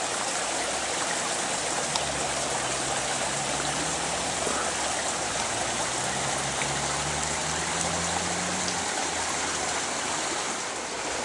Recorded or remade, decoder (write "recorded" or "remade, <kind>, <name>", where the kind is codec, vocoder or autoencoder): recorded